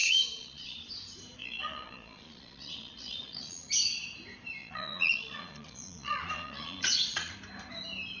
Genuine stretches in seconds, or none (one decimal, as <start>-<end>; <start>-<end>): 0.9-1.4; 3.7-4.6; 7.3-8.2